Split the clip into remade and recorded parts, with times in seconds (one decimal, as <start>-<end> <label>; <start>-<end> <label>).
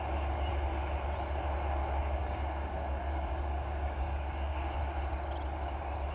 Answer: 0.0-1.8 recorded; 1.8-4.8 remade; 4.8-6.1 recorded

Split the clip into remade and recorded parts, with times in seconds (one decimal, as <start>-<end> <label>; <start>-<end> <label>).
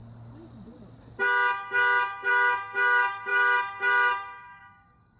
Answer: 0.0-2.3 recorded; 2.3-5.2 remade